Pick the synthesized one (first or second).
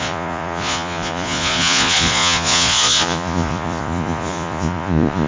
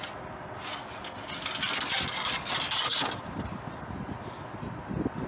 first